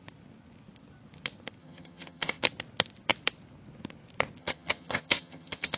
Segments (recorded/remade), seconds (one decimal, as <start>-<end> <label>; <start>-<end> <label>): 0.0-1.6 recorded; 1.6-2.4 remade; 2.4-4.4 recorded; 4.4-5.8 remade